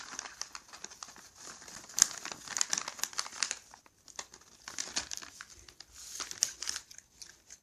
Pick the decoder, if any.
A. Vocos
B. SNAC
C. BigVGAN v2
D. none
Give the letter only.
D